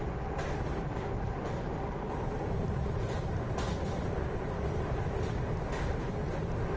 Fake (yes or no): no